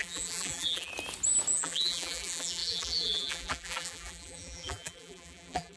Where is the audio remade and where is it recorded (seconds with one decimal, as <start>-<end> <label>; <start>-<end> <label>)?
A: 0.0-0.9 remade; 0.9-1.5 recorded; 1.5-5.8 remade